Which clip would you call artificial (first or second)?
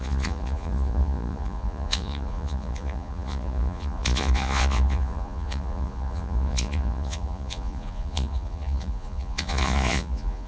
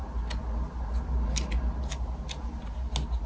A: first